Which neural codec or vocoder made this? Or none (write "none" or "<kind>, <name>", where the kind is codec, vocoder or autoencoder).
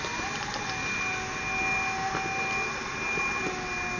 none